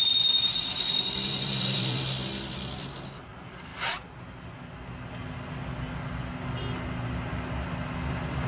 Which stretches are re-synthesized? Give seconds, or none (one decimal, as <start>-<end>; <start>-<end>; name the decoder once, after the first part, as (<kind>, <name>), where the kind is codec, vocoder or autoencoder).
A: 0.5-2.9 (vocoder, BigVGAN v2)